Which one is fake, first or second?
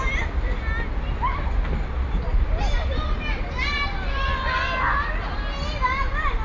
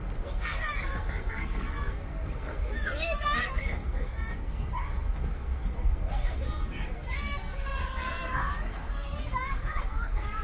second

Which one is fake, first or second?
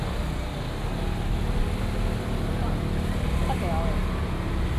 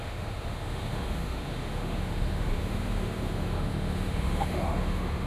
second